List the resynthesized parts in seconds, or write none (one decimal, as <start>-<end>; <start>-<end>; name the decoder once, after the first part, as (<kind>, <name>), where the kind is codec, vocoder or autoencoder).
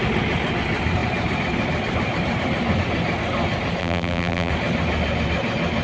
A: 3.8-4.5 (vocoder, BigVGAN v2)